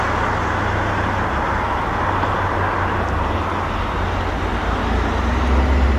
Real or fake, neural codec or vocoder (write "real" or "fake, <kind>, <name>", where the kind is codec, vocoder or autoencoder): real